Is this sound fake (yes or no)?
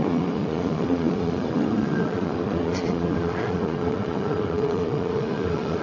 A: yes